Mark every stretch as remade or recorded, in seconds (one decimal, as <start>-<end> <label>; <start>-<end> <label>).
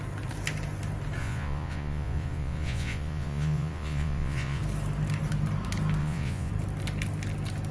0.0-1.2 recorded; 1.2-4.6 remade; 4.6-6.0 recorded; 6.0-6.5 remade; 6.5-7.7 recorded